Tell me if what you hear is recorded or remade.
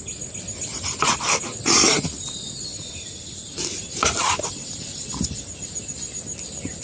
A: recorded